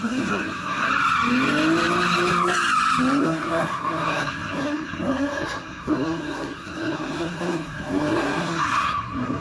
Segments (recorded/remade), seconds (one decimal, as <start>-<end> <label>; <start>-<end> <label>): 0.0-0.9 remade; 0.9-3.2 recorded; 3.2-9.4 remade